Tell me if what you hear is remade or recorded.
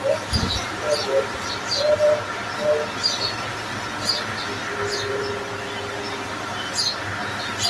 recorded